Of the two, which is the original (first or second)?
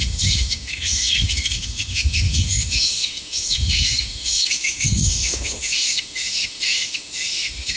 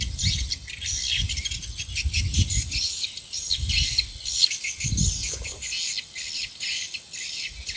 second